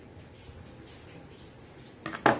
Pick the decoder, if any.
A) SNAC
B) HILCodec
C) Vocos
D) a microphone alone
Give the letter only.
D